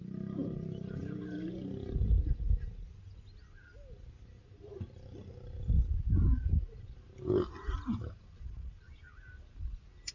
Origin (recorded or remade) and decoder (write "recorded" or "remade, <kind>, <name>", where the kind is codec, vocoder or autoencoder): recorded